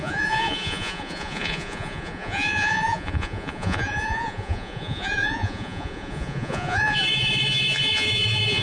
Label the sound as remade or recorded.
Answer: remade